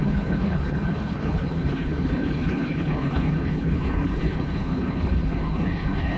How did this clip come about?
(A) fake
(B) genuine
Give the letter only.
A